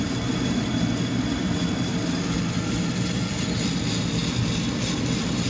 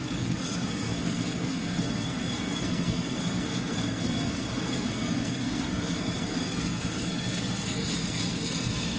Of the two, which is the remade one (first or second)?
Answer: second